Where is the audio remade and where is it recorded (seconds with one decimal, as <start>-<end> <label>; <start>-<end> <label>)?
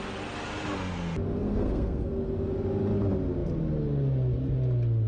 0.0-1.4 recorded; 1.4-2.1 remade; 2.1-5.1 recorded